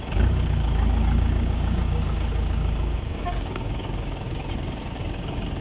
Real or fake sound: fake